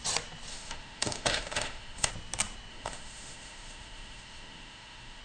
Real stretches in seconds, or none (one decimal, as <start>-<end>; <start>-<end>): 0.0-0.5; 2.1-2.7